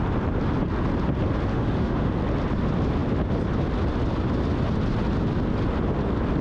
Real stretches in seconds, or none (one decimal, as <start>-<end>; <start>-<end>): 0.0-1.5; 2.1-6.4